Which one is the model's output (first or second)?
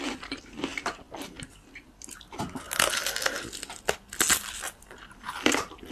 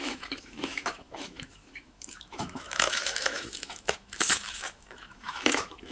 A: second